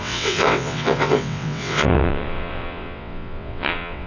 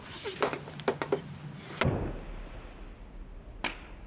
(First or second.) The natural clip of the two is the second